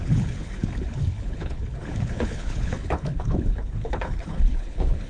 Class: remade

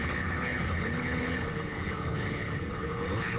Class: remade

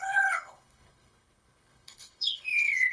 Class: remade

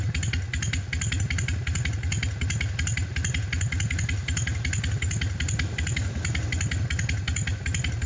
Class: recorded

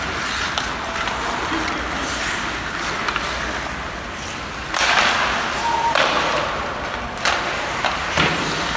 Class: recorded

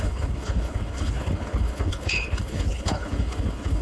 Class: remade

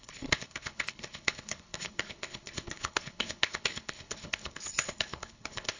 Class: remade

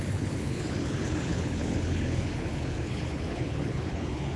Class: remade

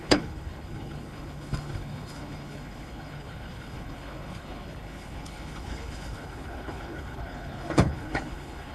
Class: remade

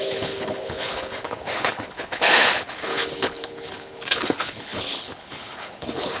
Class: remade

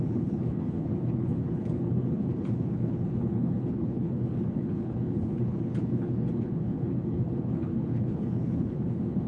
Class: remade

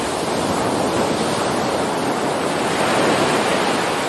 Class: recorded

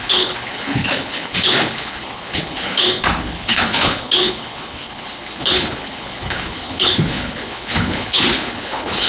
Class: remade